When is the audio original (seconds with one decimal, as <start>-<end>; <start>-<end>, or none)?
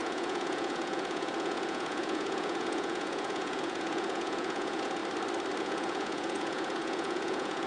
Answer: 5.0-5.6